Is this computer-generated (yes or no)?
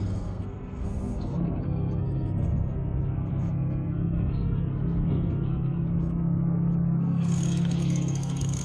yes